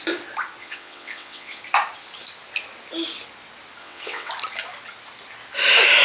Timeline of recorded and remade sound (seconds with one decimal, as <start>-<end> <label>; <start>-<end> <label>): 0.0-0.6 recorded; 0.6-1.6 remade; 1.6-3.8 recorded; 3.8-4.3 remade; 4.3-6.0 recorded